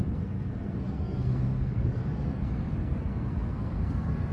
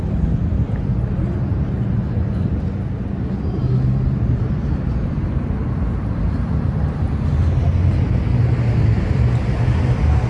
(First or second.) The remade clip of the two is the first